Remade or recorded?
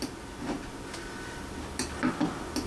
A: recorded